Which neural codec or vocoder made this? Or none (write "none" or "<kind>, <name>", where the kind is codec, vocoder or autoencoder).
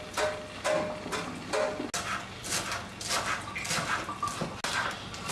none